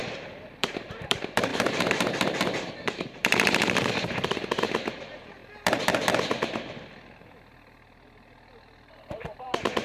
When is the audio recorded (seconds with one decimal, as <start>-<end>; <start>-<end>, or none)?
0.0-0.6; 5.4-9.1